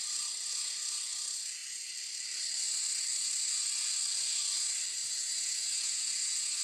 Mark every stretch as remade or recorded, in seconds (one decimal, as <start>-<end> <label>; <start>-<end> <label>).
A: 0.0-5.0 recorded; 5.0-6.6 remade